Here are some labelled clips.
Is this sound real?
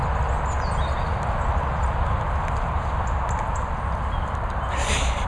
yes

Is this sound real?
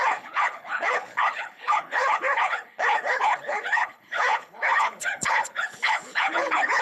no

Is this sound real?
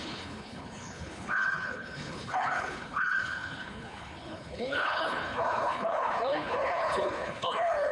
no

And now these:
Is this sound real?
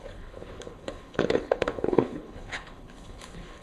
no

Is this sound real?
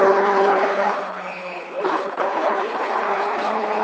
no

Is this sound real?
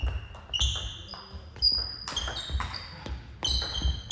yes